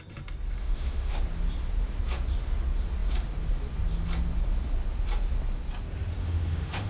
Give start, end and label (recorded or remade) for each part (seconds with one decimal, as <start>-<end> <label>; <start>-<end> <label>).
0.0-0.6 recorded; 0.6-1.2 remade; 1.2-6.2 recorded; 6.2-6.9 remade